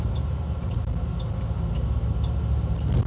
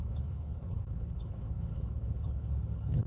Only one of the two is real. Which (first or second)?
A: first